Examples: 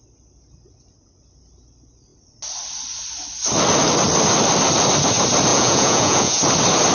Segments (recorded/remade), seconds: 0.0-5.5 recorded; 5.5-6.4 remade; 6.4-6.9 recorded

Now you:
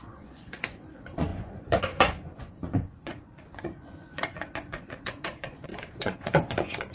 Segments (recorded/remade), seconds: 0.0-6.9 remade